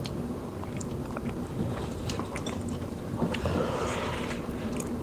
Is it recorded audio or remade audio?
remade